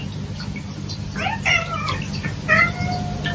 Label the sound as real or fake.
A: real